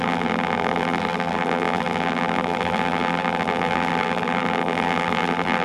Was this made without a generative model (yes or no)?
no